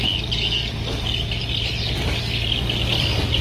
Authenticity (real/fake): real